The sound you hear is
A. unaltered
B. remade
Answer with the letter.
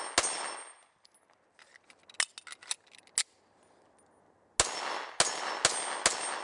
A